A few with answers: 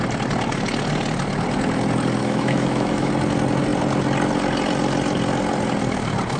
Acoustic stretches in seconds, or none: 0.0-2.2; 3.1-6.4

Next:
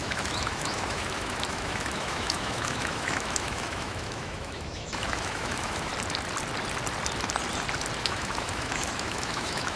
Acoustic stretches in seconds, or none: 5.9-8.0